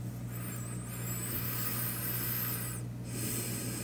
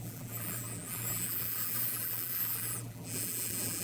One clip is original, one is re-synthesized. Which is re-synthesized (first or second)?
second